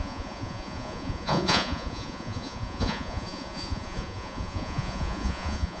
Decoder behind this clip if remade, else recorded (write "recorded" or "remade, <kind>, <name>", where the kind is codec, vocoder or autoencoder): remade, vocoder, Vocos